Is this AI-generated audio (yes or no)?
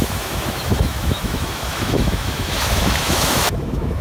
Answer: yes